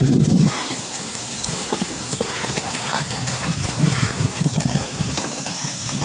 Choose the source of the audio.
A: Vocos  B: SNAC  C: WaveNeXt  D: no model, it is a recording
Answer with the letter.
B